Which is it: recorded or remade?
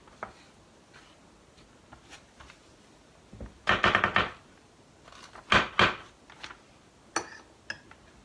recorded